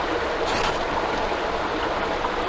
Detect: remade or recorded recorded